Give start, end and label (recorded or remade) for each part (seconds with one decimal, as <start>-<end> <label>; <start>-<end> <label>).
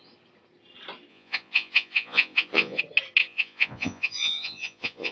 0.0-1.1 recorded; 1.1-2.8 remade; 2.8-3.2 recorded; 3.2-5.1 remade